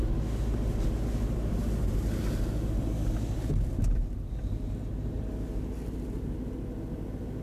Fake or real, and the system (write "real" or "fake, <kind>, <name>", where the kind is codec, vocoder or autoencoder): real